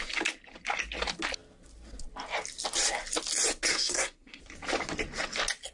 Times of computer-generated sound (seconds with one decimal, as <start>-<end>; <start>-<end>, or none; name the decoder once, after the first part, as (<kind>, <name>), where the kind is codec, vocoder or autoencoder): 3.7-4.4 (codec, SNAC)